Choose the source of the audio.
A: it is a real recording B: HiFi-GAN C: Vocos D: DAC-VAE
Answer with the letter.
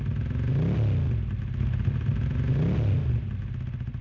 A